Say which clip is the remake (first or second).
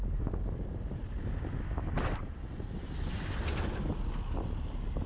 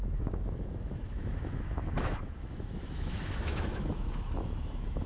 second